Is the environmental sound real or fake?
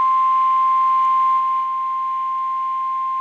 real